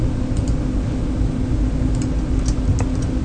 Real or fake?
real